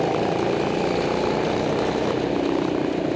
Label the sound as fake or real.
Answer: real